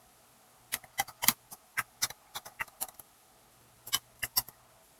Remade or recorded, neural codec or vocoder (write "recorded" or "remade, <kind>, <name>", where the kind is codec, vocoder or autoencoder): recorded